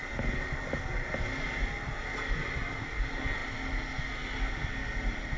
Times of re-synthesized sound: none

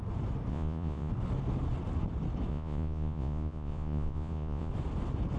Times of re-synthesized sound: 0.5-1.1 (vocoder, Vocos); 2.5-4.7

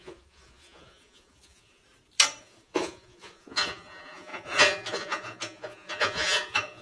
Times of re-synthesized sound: 0.0-1.8 (vocoder, Vocos); 2.4-6.8

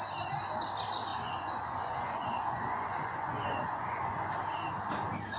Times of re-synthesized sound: 1.1-4.3 (vocoder, Vocos)

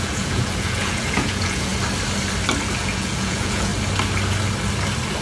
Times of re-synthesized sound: 0.0-1.7 (vocoder, Vocos); 2.8-3.7